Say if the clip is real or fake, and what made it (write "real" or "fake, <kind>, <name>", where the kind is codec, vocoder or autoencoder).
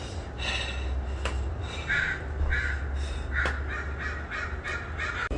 real